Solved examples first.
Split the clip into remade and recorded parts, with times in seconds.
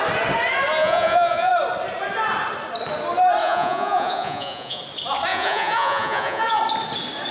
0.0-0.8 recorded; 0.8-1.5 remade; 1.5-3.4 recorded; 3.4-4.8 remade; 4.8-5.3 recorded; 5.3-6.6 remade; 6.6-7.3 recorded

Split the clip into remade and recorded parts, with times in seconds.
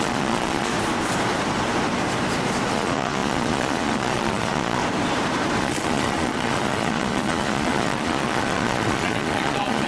0.0-0.7 remade; 0.7-2.7 recorded; 2.7-4.8 remade; 4.8-5.6 recorded; 5.6-9.9 remade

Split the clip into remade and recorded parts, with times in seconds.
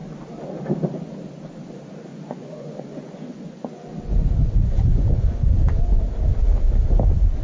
0.0-2.1 recorded; 2.1-6.0 remade; 6.0-7.4 recorded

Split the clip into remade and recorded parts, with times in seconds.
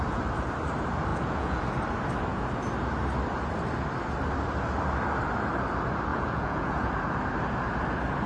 0.0-1.1 recorded; 1.1-1.6 remade; 1.6-6.1 recorded; 6.1-6.9 remade; 6.9-8.3 recorded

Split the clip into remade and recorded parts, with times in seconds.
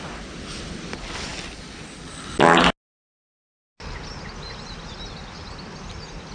0.0-6.3 recorded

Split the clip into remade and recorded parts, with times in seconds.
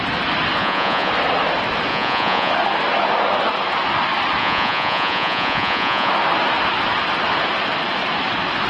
0.0-0.6 recorded; 0.6-1.1 remade; 1.1-1.9 recorded; 1.9-2.5 remade; 2.5-4.4 recorded; 4.4-6.1 remade; 6.1-8.7 recorded